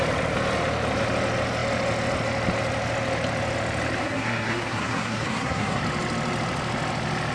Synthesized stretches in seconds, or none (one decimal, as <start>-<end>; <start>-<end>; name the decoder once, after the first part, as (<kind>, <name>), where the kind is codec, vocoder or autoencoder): 4.0-5.8 (codec, SNAC)